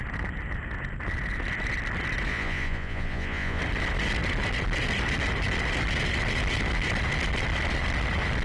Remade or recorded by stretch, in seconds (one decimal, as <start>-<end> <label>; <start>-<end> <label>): 0.0-2.3 recorded; 2.3-3.6 remade; 3.6-8.4 recorded